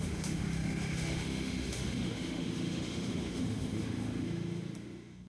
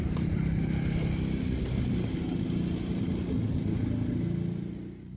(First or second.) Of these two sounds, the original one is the second